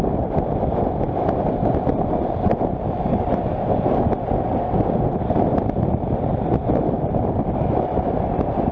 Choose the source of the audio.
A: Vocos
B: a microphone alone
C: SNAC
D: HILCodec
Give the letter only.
B